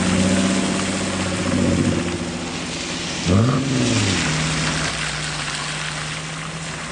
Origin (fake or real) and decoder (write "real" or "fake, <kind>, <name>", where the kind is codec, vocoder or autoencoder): real